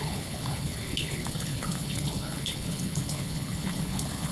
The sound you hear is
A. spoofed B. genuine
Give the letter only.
A